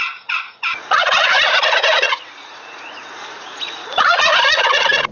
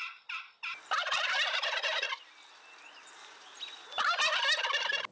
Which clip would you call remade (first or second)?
first